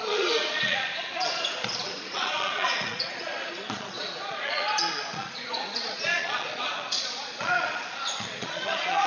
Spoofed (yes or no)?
yes